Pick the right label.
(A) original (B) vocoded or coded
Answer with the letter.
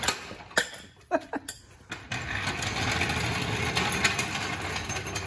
A